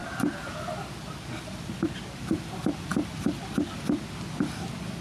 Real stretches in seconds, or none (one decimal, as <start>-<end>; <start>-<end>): 0.0-1.5; 2.9-4.4